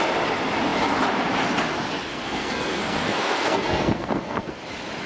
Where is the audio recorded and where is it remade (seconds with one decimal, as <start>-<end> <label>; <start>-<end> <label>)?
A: 0.0-2.1 recorded; 2.1-4.6 remade; 4.6-5.1 recorded